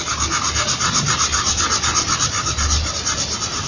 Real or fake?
real